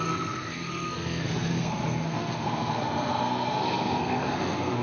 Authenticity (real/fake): fake